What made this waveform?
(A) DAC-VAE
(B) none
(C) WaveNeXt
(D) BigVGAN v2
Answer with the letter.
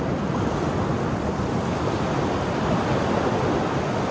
B